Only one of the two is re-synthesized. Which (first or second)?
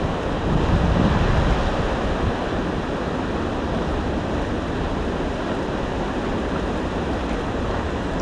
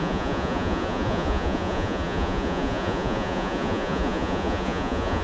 second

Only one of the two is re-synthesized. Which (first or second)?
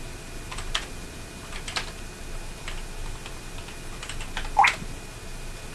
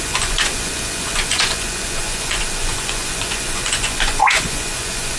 second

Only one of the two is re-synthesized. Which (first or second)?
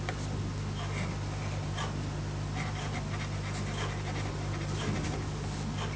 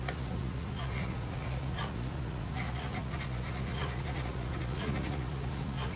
second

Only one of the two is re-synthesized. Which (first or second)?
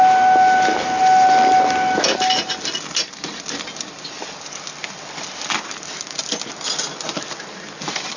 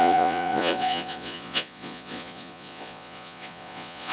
second